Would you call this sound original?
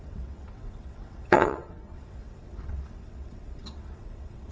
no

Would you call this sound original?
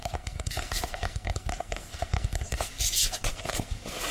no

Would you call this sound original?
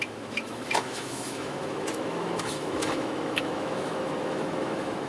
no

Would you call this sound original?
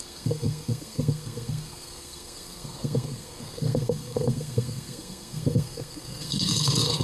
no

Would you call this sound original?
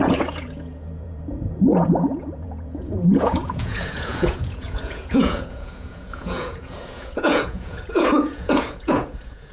no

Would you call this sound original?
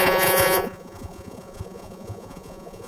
no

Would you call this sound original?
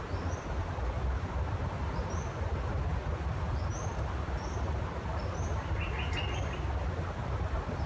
yes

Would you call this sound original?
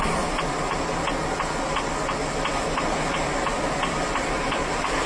yes